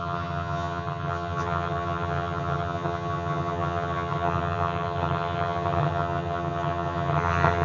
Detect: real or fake fake